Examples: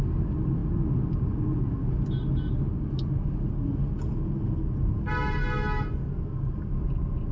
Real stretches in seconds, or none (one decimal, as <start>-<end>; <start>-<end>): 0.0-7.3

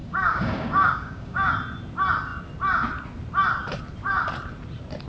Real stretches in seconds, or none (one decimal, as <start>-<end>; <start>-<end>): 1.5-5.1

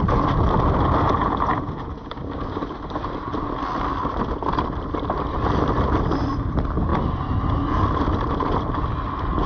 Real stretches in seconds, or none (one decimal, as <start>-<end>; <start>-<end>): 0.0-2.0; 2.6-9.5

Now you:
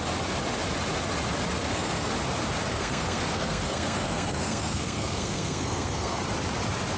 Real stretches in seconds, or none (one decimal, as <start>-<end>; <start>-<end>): 0.0-1.6; 2.1-2.7; 6.2-7.0

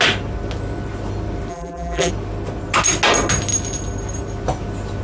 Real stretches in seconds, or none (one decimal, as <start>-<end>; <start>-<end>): 0.0-1.5; 2.1-5.0

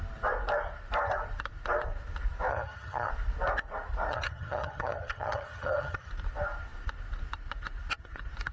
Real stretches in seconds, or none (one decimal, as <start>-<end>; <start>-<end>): 0.0-2.5; 3.1-4.1; 6.1-8.5

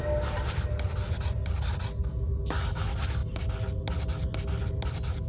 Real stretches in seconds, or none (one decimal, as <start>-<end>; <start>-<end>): 0.0-5.3